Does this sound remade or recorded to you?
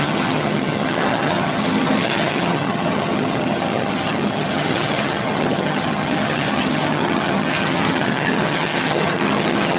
remade